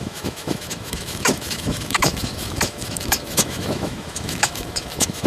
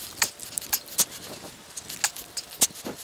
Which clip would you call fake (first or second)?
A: first